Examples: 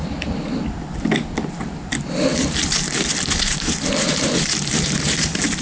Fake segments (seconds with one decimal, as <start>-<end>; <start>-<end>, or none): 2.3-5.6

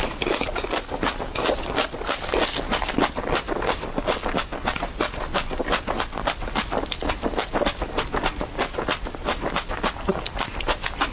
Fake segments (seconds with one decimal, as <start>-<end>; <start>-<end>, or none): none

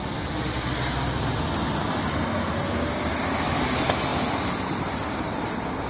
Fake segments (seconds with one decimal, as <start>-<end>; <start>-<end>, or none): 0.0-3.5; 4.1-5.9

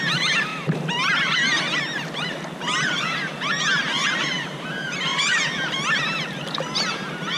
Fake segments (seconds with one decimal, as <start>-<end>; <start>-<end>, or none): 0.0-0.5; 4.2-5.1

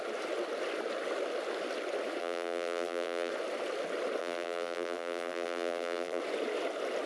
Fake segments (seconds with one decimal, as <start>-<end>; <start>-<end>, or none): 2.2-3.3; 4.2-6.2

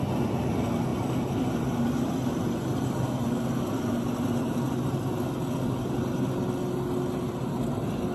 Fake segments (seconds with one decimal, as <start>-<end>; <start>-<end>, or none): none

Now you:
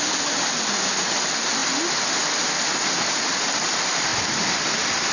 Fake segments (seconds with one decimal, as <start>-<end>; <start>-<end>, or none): none